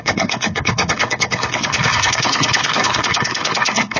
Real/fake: fake